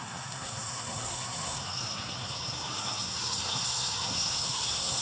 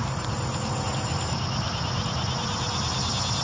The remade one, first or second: first